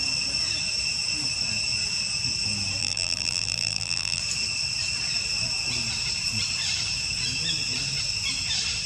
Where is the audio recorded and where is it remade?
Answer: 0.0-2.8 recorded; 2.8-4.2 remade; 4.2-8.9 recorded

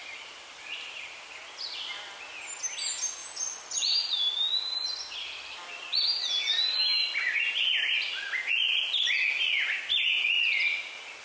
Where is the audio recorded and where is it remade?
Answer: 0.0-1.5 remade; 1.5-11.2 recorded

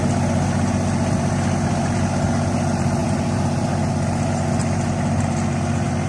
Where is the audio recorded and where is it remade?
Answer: 0.0-3.0 recorded; 3.0-3.9 remade; 3.9-6.1 recorded

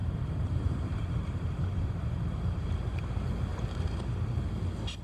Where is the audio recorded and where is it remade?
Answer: 0.0-3.0 remade; 3.0-3.5 recorded; 3.5-4.4 remade; 4.4-5.0 recorded